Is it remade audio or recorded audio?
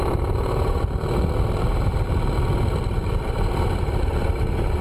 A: remade